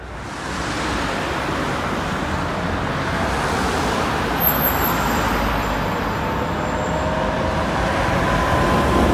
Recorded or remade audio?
recorded